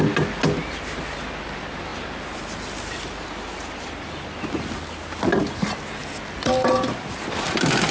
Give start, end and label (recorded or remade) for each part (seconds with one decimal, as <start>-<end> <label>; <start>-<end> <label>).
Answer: 0.0-7.9 recorded